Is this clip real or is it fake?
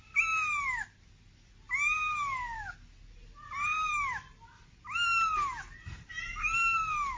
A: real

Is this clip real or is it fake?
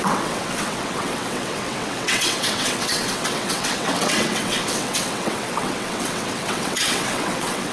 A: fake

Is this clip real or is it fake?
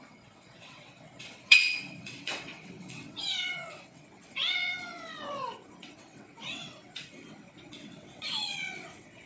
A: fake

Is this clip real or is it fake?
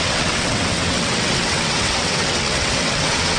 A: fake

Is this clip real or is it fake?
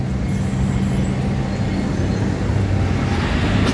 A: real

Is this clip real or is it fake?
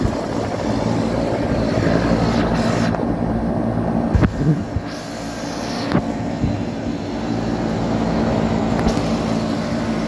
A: real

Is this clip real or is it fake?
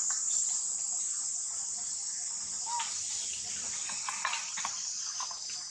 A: real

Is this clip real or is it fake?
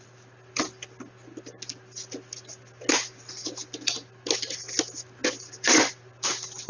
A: real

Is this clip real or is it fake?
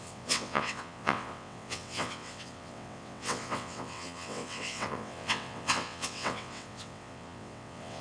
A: fake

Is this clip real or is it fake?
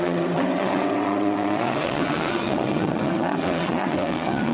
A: fake